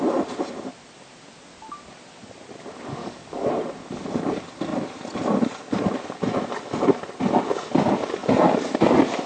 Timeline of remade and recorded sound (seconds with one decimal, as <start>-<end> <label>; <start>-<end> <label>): 0.0-3.0 recorded; 3.0-3.5 remade; 3.5-9.3 recorded